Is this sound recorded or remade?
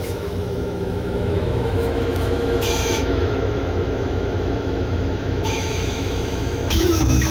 remade